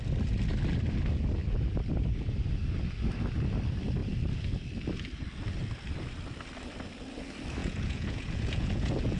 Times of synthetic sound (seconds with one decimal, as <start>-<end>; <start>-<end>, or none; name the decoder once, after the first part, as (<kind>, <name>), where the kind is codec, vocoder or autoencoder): 7.6-9.2 (vocoder, Vocos)